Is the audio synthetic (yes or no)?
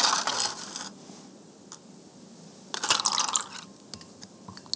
no